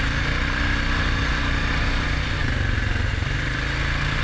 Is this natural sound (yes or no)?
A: yes